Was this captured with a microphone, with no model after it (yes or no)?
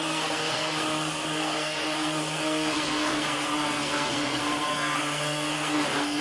no